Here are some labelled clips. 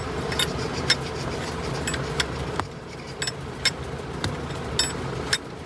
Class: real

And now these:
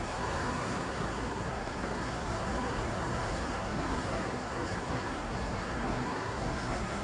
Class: fake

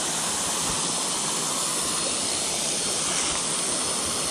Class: real